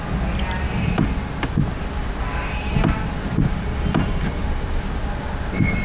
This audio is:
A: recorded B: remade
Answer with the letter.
A